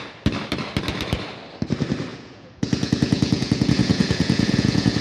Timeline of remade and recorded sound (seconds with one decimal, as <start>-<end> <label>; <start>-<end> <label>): 0.0-2.1 recorded; 2.1-5.0 remade